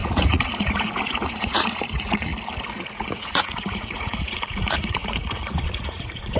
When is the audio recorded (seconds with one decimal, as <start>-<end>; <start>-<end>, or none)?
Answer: 2.3-2.9